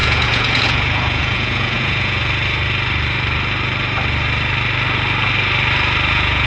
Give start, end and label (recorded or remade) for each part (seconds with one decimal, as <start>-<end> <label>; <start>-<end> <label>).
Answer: 0.0-2.2 remade; 2.2-6.1 recorded; 6.1-6.5 remade